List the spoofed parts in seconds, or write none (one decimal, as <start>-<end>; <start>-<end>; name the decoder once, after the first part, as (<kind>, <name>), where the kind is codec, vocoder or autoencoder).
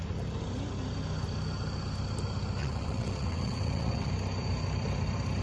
2.6-4.1 (vocoder, WaveNeXt)